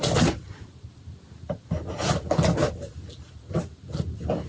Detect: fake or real real